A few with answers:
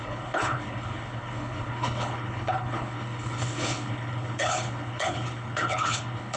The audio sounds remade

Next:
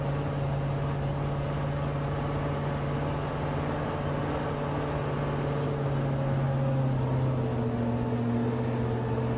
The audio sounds recorded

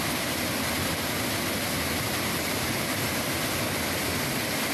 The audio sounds recorded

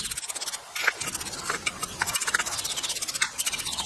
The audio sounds recorded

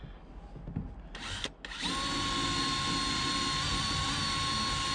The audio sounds recorded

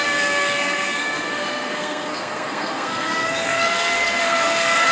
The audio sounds remade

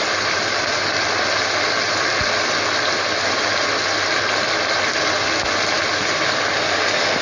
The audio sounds recorded